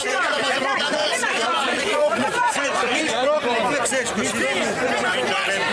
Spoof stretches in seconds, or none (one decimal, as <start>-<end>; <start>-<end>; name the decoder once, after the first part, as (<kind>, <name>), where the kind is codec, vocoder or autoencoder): 0.0-3.4 (vocoder, Vocos)